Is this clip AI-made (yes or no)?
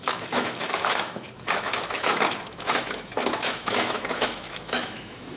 yes